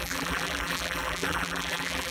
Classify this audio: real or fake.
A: fake